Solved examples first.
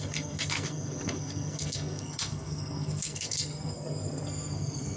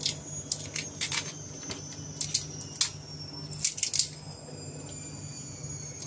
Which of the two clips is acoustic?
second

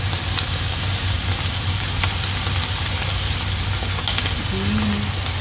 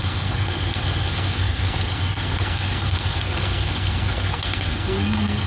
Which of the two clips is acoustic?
first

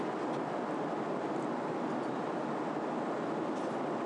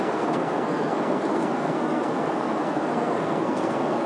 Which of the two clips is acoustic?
first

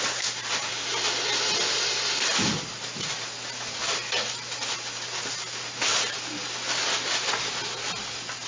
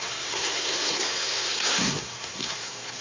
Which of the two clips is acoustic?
first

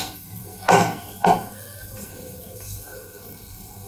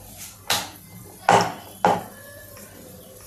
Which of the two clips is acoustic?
second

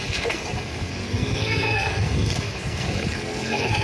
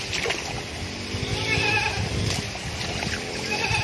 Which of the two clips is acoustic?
second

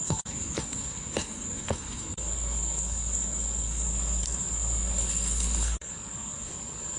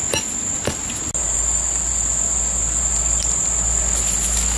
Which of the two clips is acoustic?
second